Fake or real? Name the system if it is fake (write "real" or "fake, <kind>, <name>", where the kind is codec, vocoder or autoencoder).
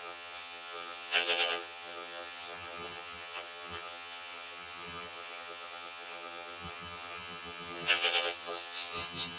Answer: fake, vocoder, HiFi-GAN